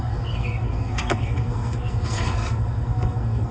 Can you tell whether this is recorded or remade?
remade